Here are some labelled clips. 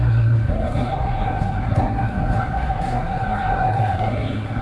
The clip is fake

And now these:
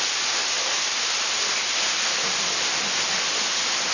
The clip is real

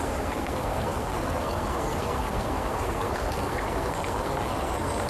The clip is fake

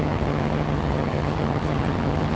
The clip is fake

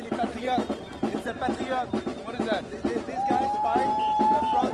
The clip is real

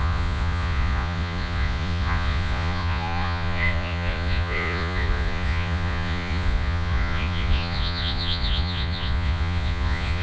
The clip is fake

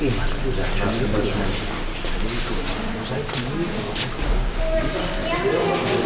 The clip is real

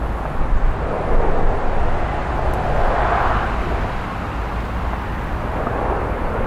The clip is real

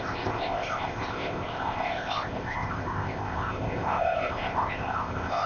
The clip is fake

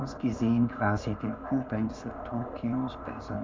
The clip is fake